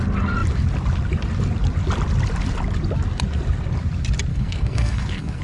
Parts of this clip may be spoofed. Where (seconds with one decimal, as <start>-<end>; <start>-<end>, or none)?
4.3-5.4